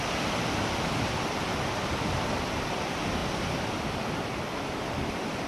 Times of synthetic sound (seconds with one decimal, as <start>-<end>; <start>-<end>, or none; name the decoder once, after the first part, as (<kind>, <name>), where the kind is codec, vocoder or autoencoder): none